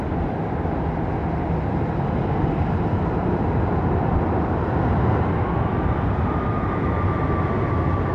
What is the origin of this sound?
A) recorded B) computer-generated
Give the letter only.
A